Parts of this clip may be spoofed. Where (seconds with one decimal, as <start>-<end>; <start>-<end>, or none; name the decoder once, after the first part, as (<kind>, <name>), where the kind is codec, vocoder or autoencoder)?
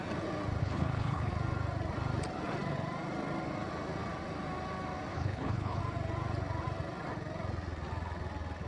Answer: 0.6-1.3 (codec, HILCodec); 5.1-5.8